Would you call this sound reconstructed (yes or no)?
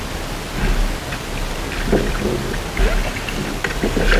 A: no